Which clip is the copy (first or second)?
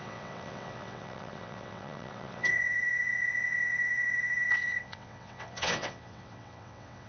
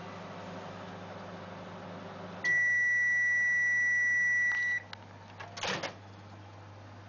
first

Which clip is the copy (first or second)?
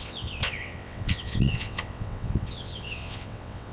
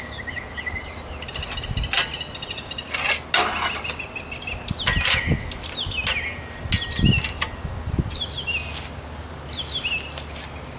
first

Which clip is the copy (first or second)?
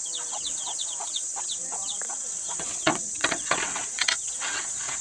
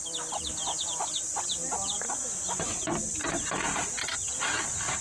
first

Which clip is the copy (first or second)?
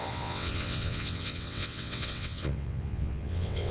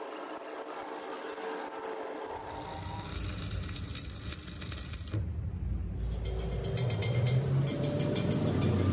first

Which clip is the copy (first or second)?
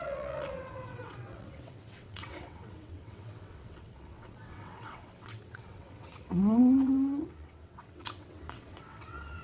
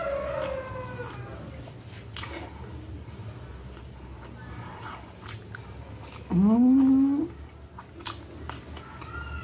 first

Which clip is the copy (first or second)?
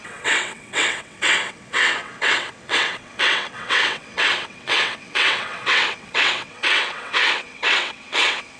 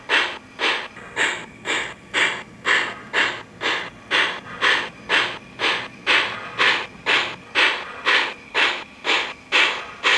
first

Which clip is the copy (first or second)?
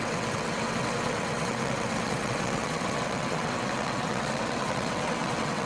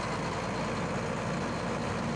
first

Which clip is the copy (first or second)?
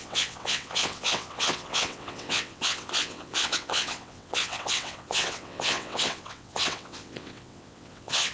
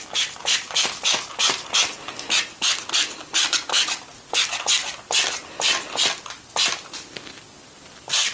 first